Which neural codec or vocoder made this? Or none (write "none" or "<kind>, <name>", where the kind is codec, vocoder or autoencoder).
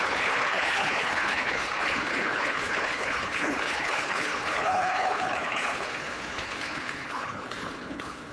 codec, HILCodec